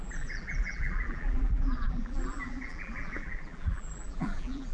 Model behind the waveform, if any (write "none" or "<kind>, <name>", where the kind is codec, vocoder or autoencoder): vocoder, BigVGAN v2